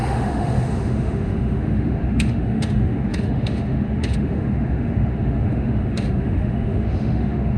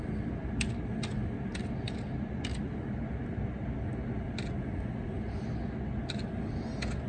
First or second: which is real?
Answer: second